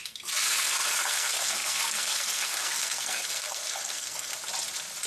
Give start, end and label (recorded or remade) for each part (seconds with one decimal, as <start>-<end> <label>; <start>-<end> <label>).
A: 0.0-4.3 remade; 4.3-5.1 recorded

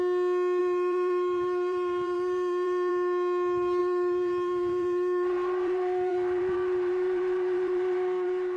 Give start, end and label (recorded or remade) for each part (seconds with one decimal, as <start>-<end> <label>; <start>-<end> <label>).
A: 0.0-0.6 recorded; 0.6-2.9 remade; 2.9-3.8 recorded; 3.8-8.6 remade

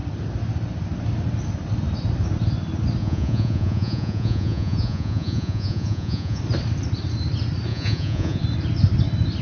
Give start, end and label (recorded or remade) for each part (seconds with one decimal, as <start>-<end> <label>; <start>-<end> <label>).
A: 0.0-3.0 recorded; 3.0-6.4 remade; 6.4-7.7 recorded; 7.7-8.4 remade; 8.4-9.4 recorded